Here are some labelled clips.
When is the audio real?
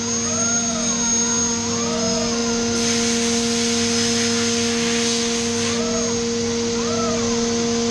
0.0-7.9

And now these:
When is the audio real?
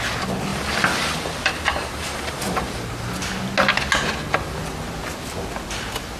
0.0-0.5; 2.7-6.2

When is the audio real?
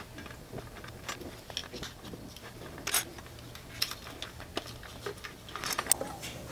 0.0-6.5